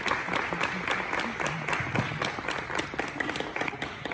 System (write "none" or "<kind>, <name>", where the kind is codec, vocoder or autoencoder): none